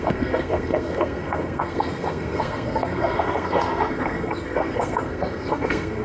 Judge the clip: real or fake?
fake